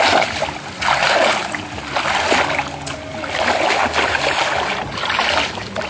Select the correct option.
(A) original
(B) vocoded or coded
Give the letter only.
A